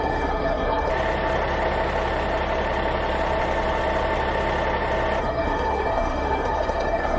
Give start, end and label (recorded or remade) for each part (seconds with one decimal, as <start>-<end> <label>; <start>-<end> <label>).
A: 0.0-0.9 remade; 0.9-5.2 recorded; 5.2-7.2 remade